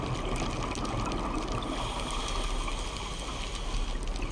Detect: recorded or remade recorded